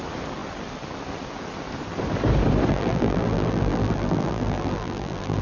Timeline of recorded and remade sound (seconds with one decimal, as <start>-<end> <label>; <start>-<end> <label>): 0.0-2.7 recorded; 2.7-5.4 remade